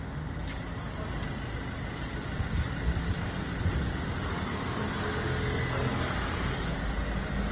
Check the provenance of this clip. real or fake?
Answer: real